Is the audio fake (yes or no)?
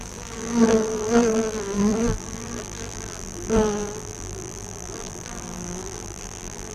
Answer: yes